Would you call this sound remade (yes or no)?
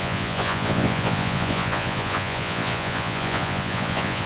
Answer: yes